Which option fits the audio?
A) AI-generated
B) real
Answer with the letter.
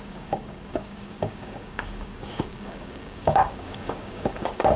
A